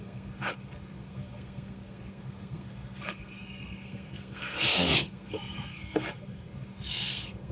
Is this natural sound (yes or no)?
no